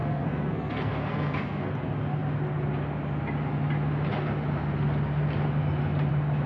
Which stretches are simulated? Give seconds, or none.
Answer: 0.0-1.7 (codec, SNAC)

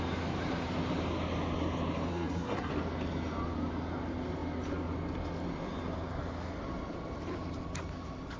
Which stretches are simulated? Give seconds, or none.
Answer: 2.1-2.7 (codec, SNAC)

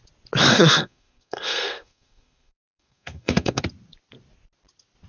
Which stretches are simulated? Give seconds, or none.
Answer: 0.5-3.6 (codec, SNAC)

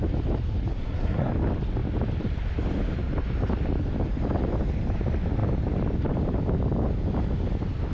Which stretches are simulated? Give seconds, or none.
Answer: 0.7-1.3 (codec, SNAC)